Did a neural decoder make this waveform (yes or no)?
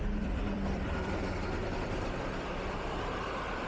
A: yes